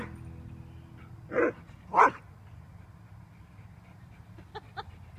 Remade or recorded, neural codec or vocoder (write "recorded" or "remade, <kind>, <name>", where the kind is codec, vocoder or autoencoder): recorded